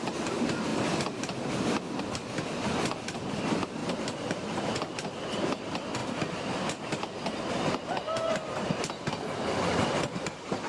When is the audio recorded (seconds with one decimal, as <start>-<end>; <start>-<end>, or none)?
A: 0.0-3.8; 4.7-10.7